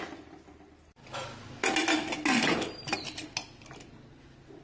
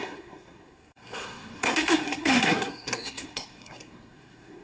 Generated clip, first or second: second